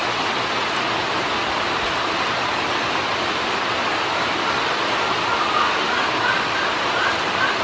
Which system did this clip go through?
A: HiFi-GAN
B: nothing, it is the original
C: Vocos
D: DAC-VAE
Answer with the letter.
B